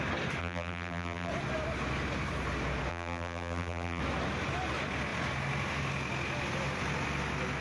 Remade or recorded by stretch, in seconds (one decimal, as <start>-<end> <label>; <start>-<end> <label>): 0.0-0.4 recorded; 0.4-1.3 remade; 1.3-2.9 recorded; 2.9-4.0 remade; 4.0-7.6 recorded